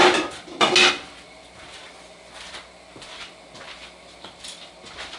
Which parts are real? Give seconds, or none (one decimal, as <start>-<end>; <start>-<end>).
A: 0.0-5.2